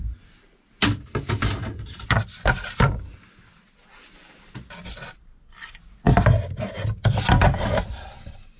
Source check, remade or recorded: recorded